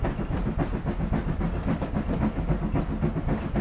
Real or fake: real